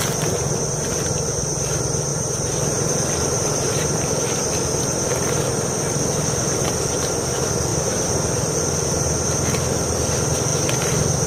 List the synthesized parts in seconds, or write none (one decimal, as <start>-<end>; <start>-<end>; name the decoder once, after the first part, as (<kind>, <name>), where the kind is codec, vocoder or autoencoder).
2.1-3.7 (vocoder, BigVGAN v2); 7.7-8.6